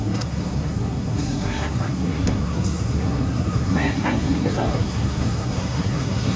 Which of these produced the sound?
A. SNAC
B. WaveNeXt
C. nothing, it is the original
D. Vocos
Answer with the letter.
A